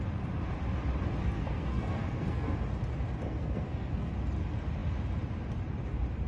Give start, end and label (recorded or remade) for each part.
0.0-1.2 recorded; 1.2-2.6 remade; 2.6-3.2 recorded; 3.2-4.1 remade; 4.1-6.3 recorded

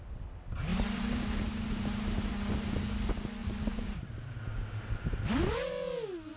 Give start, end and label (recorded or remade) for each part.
0.0-0.7 recorded; 0.7-2.3 remade; 2.3-3.4 recorded; 3.4-4.4 remade; 4.4-6.4 recorded

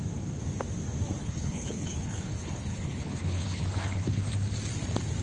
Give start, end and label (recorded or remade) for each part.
0.0-1.2 recorded; 1.2-4.3 remade; 4.3-5.2 recorded